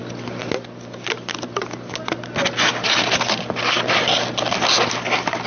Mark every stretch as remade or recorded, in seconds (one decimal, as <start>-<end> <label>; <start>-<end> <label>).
0.0-5.5 recorded